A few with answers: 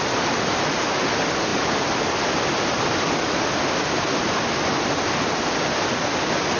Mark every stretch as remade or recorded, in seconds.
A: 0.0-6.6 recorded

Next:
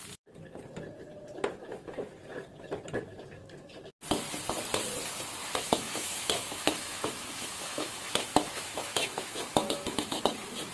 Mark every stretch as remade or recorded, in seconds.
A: 0.0-1.6 recorded; 1.6-2.1 remade; 2.1-5.4 recorded; 5.4-10.2 remade; 10.2-10.7 recorded

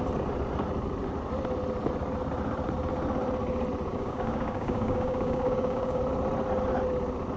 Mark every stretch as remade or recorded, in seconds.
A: 0.0-3.9 recorded; 3.9-6.0 remade; 6.0-7.4 recorded